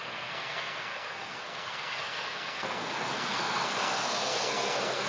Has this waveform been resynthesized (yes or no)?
yes